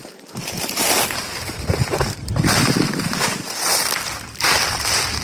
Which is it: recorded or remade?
remade